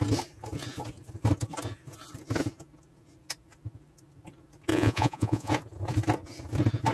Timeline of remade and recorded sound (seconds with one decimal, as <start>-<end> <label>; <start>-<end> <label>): 0.0-4.7 recorded; 4.7-5.5 remade; 5.5-6.9 recorded